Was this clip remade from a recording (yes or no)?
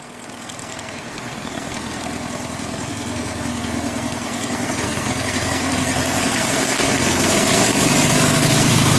yes